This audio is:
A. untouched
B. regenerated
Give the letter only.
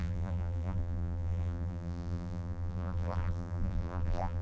B